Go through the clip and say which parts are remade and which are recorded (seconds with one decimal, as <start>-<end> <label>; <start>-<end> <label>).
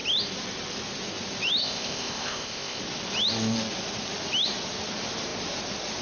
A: 0.0-1.6 recorded; 1.6-2.8 remade; 2.8-6.0 recorded